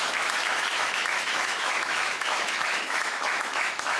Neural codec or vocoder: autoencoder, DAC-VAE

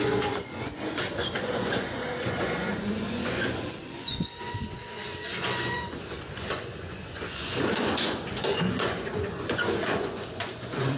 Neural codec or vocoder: vocoder, Vocos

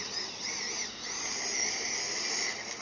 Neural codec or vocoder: none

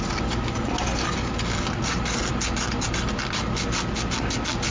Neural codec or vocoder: none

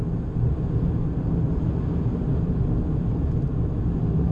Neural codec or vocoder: none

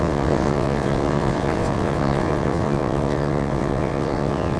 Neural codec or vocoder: vocoder, WaveNeXt